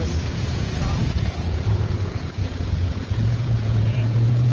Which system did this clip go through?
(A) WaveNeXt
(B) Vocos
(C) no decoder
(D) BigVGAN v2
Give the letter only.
B